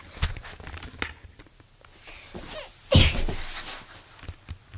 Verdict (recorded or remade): recorded